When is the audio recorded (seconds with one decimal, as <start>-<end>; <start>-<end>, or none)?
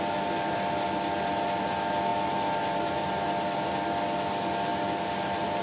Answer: 0.0-2.1; 3.1-5.6